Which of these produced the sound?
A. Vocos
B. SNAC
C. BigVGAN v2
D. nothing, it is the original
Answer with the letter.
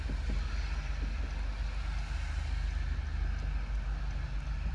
D